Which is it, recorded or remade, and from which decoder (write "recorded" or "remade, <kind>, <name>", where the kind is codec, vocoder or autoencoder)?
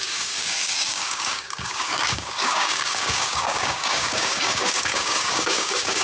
remade, codec, DAC